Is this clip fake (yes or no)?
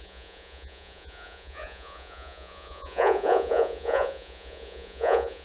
yes